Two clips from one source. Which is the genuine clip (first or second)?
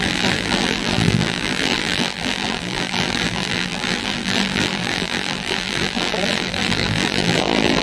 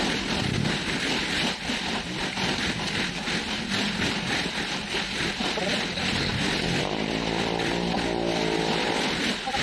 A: second